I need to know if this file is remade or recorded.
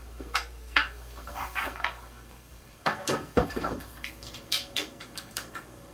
remade